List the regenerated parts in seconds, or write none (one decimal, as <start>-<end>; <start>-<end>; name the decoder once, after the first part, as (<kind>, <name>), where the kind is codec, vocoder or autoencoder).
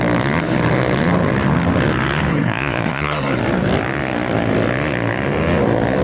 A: 2.3-3.4 (codec, SNAC)